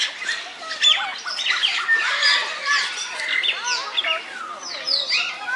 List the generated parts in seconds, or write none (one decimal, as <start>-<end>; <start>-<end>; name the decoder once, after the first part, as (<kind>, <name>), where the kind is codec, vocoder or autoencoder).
none